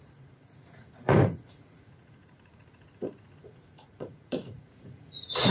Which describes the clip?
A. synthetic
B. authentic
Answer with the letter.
A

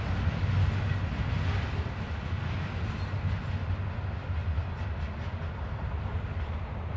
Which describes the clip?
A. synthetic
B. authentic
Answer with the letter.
B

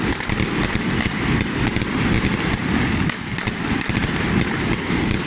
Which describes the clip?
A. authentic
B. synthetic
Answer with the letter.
A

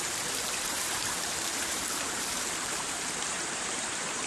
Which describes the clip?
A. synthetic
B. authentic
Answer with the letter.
A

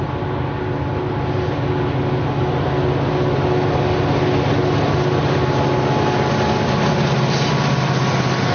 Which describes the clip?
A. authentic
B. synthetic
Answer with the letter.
A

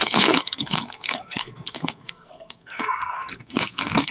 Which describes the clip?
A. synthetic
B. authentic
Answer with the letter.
A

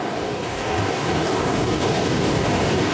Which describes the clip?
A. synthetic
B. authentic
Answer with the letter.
A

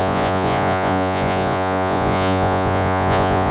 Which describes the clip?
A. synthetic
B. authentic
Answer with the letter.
A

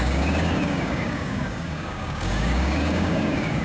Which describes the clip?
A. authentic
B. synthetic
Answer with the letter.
B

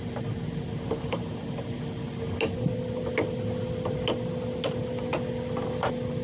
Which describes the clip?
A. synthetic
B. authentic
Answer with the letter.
B